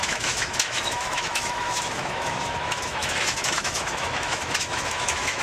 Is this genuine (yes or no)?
no